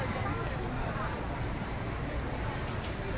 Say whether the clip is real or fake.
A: real